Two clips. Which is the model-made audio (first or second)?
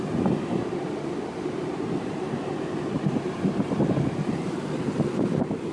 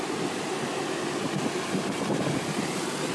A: first